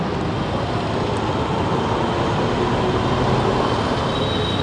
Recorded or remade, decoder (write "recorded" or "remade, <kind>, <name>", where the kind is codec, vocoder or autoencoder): recorded